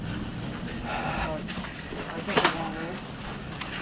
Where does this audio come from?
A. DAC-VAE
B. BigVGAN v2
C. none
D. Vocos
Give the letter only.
C